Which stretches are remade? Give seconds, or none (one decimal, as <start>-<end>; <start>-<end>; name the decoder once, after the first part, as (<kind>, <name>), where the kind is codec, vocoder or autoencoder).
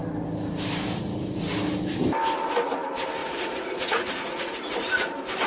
3.2-5.1 (vocoder, Vocos)